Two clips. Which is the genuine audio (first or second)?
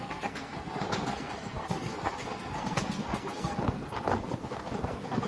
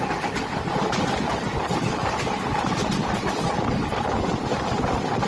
second